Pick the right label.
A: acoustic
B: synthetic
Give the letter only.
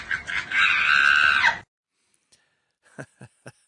A